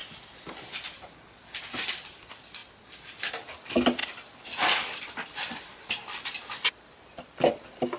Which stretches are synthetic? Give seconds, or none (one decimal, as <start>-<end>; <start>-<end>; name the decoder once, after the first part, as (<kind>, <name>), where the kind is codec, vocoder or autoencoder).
2.1-2.6 (vocoder, BigVGAN v2); 3.3-4.0; 4.8-8.0